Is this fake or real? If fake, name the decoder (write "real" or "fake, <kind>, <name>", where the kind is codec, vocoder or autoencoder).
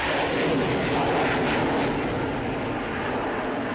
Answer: real